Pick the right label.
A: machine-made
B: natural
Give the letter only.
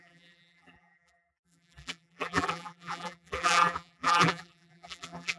A